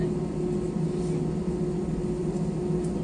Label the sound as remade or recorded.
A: recorded